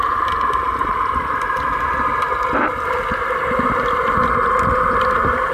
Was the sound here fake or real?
real